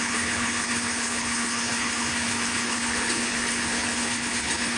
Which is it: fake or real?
fake